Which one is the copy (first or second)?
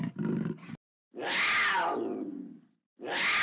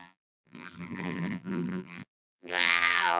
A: second